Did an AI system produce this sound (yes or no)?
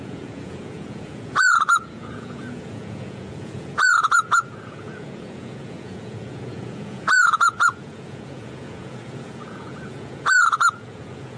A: yes